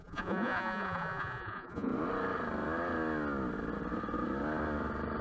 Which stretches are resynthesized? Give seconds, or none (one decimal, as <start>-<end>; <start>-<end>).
0.0-1.9